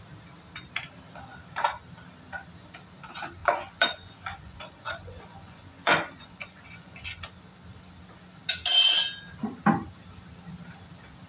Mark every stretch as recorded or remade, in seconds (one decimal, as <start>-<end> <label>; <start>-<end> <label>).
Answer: 0.0-3.4 recorded; 3.4-7.2 remade; 7.2-11.3 recorded